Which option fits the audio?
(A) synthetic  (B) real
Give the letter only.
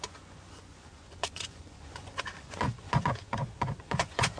A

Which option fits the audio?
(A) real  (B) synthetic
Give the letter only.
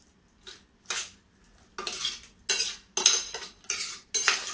A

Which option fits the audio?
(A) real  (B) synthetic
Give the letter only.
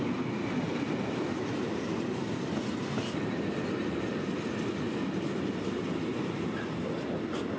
A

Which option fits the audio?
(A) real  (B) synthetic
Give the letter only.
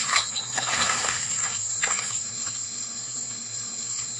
B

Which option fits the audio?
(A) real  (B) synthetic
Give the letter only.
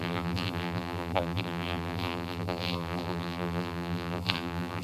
B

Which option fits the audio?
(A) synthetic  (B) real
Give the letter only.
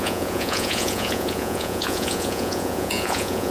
A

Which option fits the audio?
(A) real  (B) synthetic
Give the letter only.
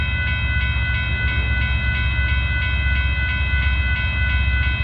A